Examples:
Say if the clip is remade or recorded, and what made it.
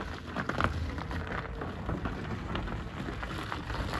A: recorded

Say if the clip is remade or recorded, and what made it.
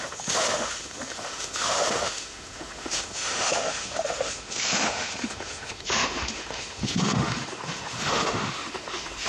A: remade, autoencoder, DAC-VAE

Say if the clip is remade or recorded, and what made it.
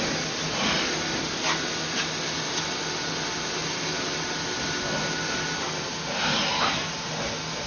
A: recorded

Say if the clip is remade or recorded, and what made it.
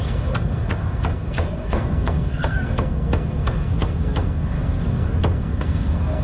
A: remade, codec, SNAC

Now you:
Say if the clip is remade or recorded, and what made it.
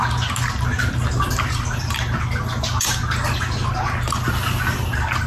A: recorded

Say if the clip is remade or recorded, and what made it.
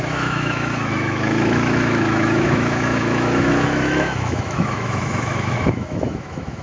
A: remade, autoencoder, DAC-VAE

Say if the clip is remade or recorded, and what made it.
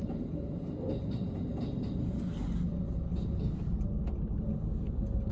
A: recorded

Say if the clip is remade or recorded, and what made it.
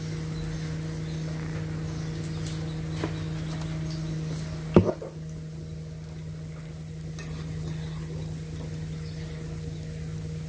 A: recorded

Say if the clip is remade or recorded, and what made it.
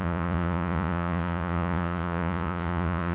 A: remade, vocoder, Vocos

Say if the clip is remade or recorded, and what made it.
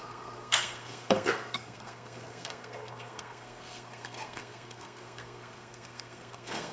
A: remade, codec, SNAC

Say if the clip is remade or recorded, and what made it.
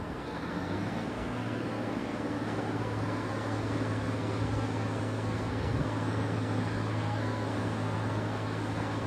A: remade, codec, SNAC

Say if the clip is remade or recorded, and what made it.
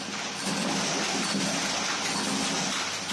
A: recorded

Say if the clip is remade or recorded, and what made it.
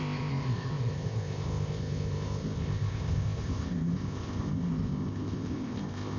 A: remade, codec, ZipCodec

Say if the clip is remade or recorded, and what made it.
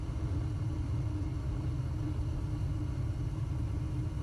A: recorded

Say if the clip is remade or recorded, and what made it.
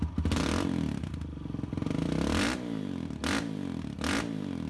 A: recorded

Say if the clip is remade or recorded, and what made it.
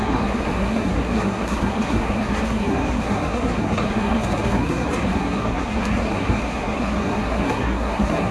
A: remade, codec, SNAC